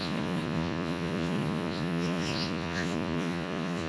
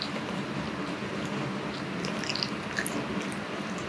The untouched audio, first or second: second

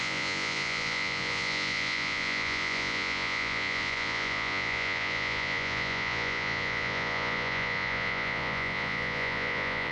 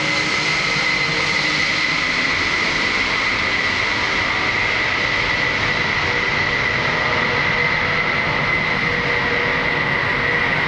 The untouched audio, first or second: second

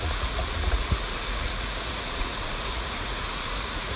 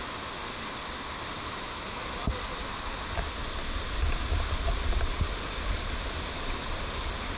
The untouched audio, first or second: second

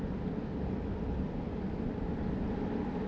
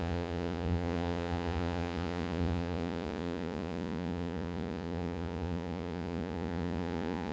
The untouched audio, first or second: first